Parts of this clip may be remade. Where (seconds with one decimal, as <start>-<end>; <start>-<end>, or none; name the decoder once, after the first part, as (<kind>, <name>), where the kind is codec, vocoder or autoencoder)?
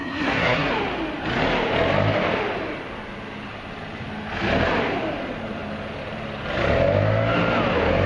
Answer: 0.0-0.7 (codec, SNAC)